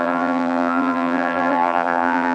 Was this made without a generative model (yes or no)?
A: no